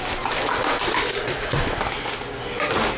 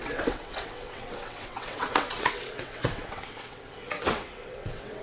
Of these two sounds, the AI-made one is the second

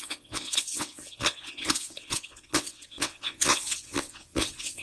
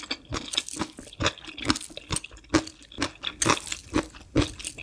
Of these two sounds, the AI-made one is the first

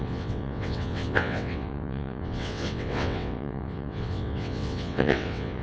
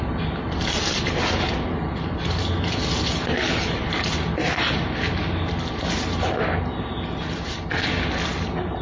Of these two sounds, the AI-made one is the first